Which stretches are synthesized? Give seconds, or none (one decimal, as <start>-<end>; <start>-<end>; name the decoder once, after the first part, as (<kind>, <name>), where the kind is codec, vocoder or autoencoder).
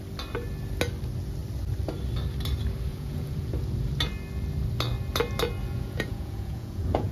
2.9-3.5 (vocoder, Vocos); 5.6-7.1